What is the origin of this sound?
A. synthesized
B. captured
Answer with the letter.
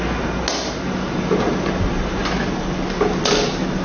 B